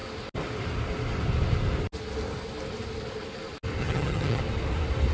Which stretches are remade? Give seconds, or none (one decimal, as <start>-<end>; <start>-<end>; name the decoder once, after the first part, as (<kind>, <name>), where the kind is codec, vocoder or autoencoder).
3.8-4.4 (vocoder, HiFi-GAN)

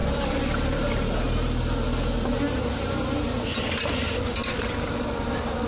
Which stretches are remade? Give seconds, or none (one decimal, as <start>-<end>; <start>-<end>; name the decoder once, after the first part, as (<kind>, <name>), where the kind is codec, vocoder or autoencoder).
none